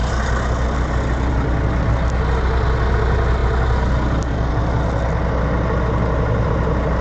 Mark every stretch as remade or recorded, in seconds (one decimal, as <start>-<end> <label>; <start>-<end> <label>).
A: 0.0-7.0 recorded

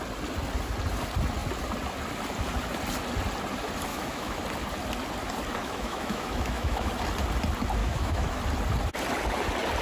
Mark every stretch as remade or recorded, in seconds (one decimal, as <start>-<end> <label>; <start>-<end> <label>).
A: 0.0-3.9 recorded; 3.9-4.4 remade; 4.4-5.6 recorded; 5.6-6.9 remade; 6.9-7.8 recorded; 7.8-8.4 remade; 8.4-9.8 recorded